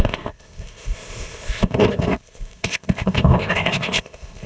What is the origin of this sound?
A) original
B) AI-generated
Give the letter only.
B